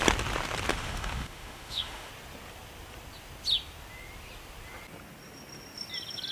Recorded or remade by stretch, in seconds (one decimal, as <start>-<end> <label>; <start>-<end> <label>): 0.0-0.7 recorded; 0.7-2.1 remade; 2.1-6.3 recorded